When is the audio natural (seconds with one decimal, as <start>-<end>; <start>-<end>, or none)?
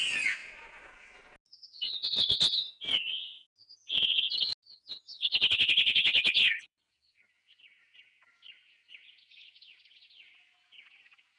0.0-5.1; 6.9-11.4